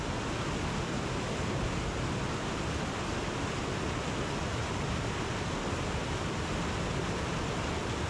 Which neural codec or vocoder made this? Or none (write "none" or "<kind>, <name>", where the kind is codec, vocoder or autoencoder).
none